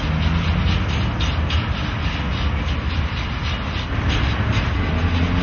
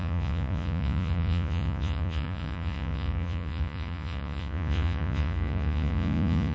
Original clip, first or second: first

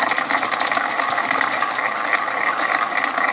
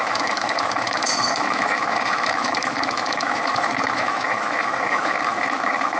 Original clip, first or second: first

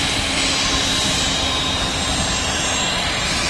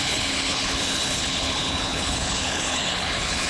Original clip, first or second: first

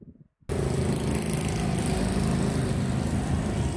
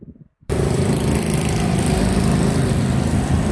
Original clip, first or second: first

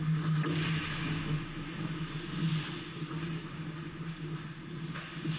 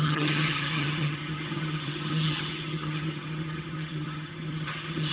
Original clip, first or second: first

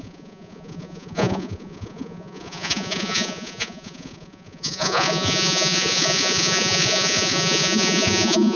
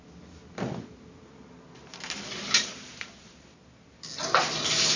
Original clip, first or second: second